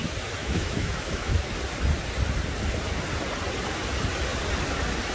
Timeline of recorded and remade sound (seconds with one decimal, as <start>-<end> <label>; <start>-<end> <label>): 0.0-0.4 recorded; 0.4-1.4 remade; 1.4-5.1 recorded